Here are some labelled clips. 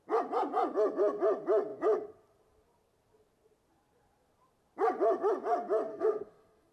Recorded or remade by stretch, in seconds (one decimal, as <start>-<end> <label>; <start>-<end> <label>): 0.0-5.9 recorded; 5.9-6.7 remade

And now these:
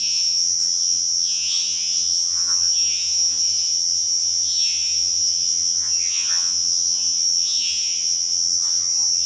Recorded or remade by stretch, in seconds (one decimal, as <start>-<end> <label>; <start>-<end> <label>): 0.0-9.3 remade

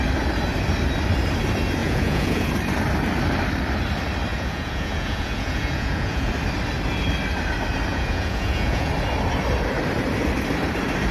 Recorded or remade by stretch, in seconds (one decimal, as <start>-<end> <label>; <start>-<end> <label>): 0.0-1.8 recorded; 1.8-2.5 remade; 2.5-4.3 recorded; 4.3-6.3 remade; 6.3-7.9 recorded; 7.9-8.9 remade; 8.9-11.1 recorded

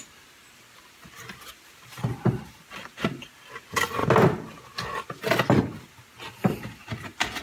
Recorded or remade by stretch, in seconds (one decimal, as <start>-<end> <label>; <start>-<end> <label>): 0.0-7.4 recorded

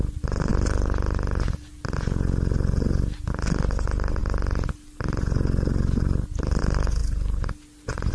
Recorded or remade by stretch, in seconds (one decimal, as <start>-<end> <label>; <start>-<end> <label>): 0.0-8.1 recorded

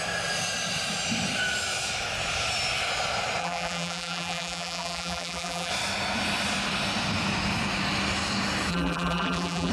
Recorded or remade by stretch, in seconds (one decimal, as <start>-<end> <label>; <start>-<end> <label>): 0.0-3.4 recorded; 3.4-5.7 remade; 5.7-8.7 recorded; 8.7-9.7 remade